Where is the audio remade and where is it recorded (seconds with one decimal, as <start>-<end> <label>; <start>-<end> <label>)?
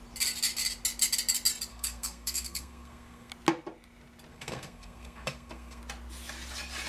0.0-1.7 recorded; 1.7-3.3 remade; 3.3-4.3 recorded; 4.3-5.8 remade; 5.8-6.9 recorded